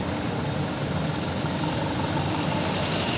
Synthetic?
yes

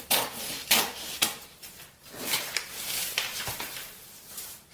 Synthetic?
yes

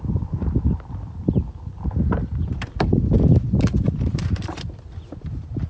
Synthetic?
yes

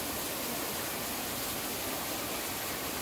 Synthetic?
no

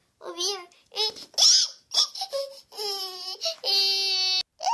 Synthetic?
no